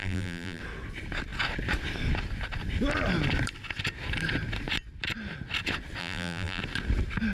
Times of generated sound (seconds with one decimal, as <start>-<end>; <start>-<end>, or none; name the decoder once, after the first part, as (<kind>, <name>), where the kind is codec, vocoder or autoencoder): 0.0-0.6 (vocoder, BigVGAN v2); 6.0-6.6